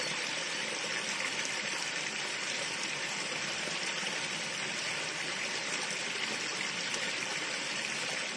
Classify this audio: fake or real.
fake